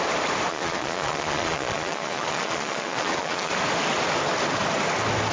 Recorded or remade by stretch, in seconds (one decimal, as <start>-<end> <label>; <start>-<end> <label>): 0.0-0.5 recorded; 0.5-3.5 remade; 3.5-5.3 recorded